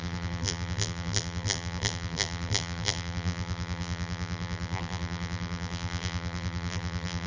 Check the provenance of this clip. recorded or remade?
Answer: remade